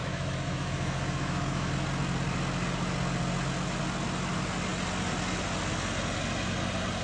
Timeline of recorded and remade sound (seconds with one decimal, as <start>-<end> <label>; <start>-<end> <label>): 0.0-1.7 remade; 1.7-7.0 recorded